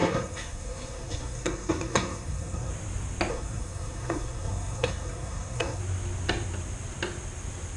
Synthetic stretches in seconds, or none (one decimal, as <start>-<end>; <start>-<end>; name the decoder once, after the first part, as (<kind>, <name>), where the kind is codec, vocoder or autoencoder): 0.0-2.7 (codec, SNAC); 3.3-5.8